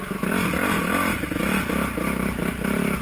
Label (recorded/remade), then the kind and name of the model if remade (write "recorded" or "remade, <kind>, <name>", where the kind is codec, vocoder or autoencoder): recorded